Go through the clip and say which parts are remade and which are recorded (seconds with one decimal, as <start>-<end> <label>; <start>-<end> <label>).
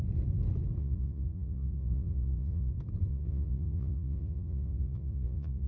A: 0.0-0.8 recorded; 0.8-2.7 remade; 2.7-3.1 recorded; 3.1-5.7 remade